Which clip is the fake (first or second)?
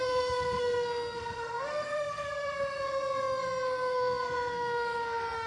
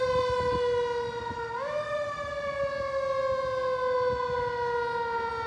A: first